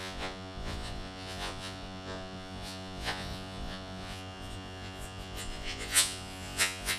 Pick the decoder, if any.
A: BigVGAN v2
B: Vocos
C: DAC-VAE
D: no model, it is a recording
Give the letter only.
B